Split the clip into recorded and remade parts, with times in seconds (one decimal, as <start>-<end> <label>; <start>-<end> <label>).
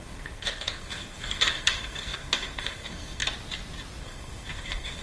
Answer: 0.0-3.2 remade; 3.2-4.0 recorded; 4.0-5.0 remade